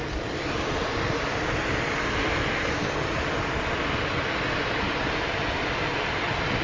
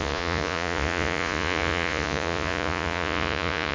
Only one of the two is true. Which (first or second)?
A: first